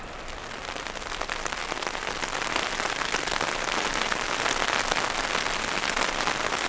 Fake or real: real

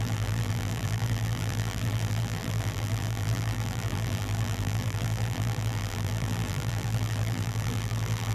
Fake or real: fake